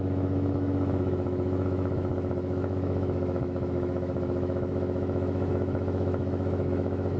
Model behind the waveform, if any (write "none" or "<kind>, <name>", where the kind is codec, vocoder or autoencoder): autoencoder, DAC-VAE